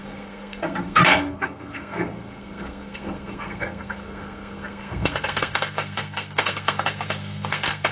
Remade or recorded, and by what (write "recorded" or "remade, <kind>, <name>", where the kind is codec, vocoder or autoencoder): remade, codec, SNAC